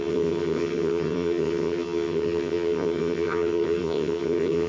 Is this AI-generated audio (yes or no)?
yes